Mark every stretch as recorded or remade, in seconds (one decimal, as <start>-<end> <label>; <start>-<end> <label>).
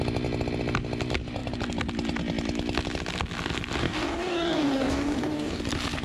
0.0-3.8 recorded; 3.8-5.6 remade; 5.6-6.0 recorded